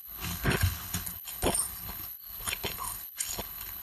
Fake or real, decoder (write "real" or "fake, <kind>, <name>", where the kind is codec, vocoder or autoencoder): fake, codec, HILCodec